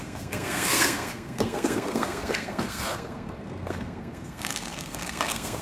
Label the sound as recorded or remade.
remade